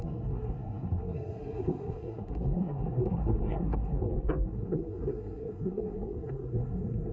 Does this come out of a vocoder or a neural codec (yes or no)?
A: yes